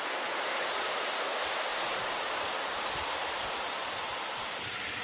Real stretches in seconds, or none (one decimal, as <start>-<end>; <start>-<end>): 0.0-1.7; 2.3-5.0